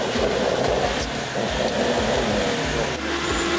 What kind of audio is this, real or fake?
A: real